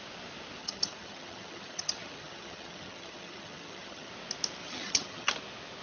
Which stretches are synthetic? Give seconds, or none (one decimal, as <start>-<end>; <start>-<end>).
0.6-4.1; 4.6-5.3